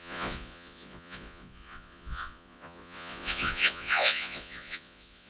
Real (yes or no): no